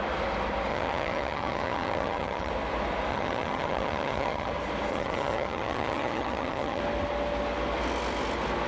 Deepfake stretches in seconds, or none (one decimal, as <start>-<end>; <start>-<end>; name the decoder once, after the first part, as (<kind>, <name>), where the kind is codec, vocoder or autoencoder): 0.7-2.5 (vocoder, HiFi-GAN); 3.1-4.5; 4.9-6.8

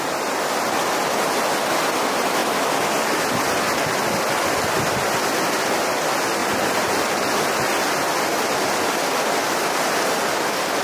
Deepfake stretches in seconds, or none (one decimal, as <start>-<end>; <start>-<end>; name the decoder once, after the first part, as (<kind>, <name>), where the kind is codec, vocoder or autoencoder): 6.4-7.0 (vocoder, BigVGAN v2)